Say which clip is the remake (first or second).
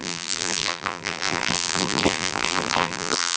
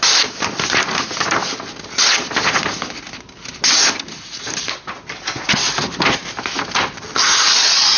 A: first